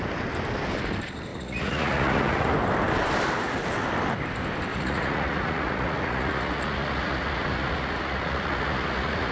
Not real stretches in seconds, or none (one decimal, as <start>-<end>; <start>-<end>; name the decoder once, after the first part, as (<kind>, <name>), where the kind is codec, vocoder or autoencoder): 1.3-2.5 (vocoder, Vocos); 4.7-9.3

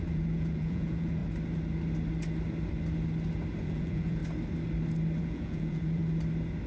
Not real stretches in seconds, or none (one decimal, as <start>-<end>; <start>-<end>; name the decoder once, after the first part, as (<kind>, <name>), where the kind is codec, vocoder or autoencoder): 0.0-1.2 (vocoder, Vocos); 3.6-4.2; 5.2-6.0

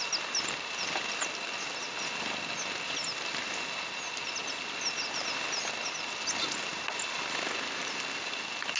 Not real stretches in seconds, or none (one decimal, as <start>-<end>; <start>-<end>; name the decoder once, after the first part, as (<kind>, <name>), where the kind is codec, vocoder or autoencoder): none

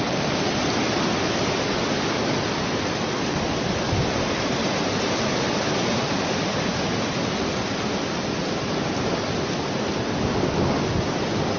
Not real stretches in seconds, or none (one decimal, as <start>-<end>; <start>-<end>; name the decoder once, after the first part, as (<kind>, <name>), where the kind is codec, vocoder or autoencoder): none

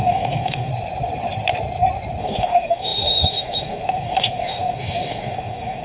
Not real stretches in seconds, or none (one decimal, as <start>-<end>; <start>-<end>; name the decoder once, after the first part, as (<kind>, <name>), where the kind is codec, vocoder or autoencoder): 0.0-0.7 (autoencoder, DAC-VAE); 2.2-5.8

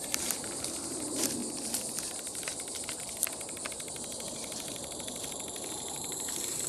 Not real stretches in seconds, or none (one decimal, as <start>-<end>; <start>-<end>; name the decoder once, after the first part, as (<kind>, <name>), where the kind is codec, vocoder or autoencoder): 0.0-1.4 (vocoder, BigVGAN v2); 2.0-2.5; 3.7-6.7

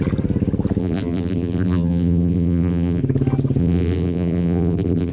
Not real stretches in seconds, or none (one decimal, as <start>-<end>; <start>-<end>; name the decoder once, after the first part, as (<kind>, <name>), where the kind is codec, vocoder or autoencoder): 0.8-3.0 (vocoder, BigVGAN v2); 3.6-5.1